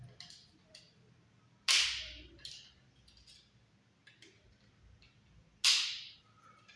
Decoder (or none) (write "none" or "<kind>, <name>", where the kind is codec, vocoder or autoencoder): none